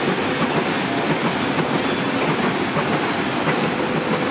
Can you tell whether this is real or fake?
real